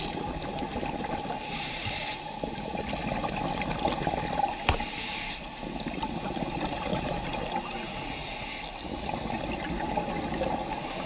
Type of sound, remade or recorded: recorded